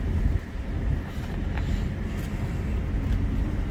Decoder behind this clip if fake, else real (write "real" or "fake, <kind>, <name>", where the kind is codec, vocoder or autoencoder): real